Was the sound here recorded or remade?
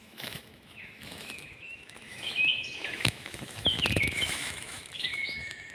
remade